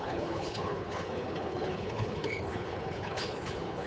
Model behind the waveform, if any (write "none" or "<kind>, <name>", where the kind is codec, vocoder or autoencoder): codec, HILCodec